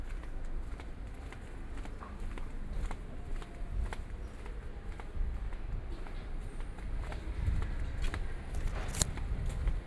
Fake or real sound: real